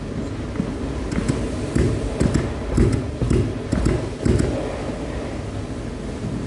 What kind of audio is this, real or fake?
real